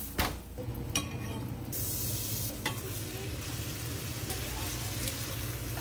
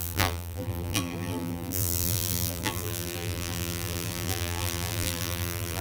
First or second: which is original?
first